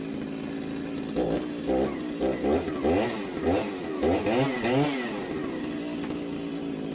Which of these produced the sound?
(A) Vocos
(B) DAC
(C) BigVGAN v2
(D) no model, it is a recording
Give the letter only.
D